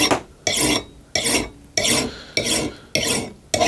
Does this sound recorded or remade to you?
recorded